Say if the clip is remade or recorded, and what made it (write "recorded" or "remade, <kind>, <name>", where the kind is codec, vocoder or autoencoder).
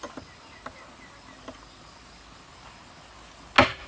recorded